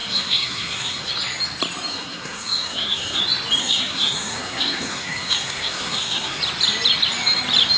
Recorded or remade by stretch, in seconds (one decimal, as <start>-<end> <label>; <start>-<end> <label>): 0.0-1.1 remade; 1.1-1.9 recorded; 1.9-3.2 remade; 3.2-3.6 recorded; 3.6-6.4 remade; 6.4-7.8 recorded